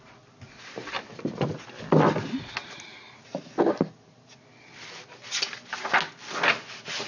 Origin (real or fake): real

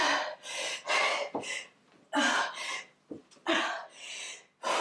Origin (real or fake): real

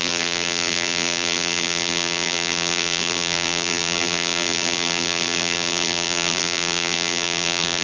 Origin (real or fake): fake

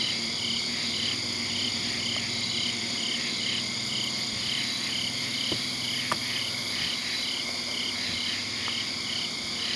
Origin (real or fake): fake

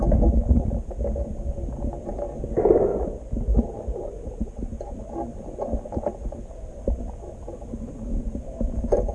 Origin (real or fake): real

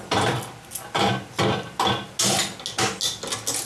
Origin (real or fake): real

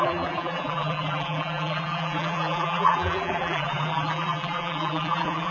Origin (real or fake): fake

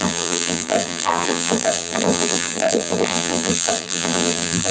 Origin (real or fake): fake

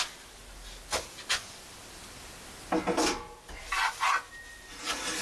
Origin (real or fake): real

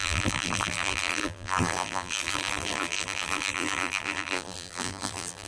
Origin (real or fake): fake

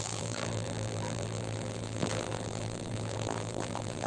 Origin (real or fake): fake